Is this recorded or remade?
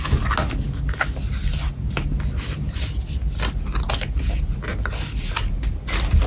recorded